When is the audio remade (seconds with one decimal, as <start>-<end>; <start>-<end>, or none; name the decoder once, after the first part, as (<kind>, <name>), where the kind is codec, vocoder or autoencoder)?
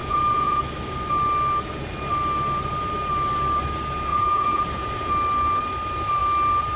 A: 0.0-0.6 (vocoder, Vocos); 4.1-5.1